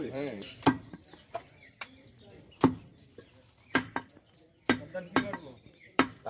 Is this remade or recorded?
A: remade